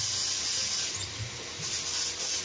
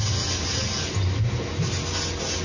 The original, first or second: second